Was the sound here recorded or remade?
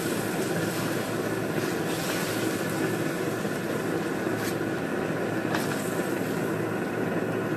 recorded